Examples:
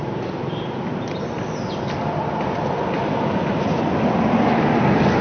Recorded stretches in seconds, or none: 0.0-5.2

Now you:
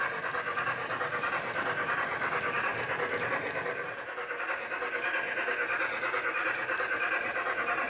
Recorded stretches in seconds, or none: 0.0-7.9

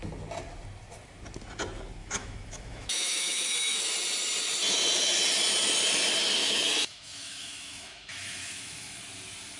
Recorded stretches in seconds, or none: 0.0-2.0; 3.8-6.4; 9.0-9.6

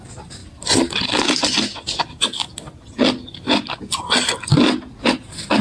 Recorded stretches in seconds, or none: 0.0-5.6

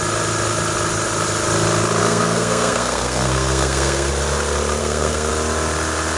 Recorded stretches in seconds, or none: 0.0-2.0; 4.1-4.8; 5.3-6.2